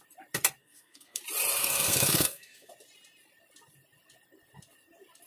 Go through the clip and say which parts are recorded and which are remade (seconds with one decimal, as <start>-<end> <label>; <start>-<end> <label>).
0.0-0.6 recorded; 0.6-1.2 remade; 1.2-1.6 recorded; 1.6-2.7 remade; 2.7-5.3 recorded